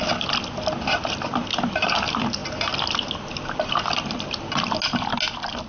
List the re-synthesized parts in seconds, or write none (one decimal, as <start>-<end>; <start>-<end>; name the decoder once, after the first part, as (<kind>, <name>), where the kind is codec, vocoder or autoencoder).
none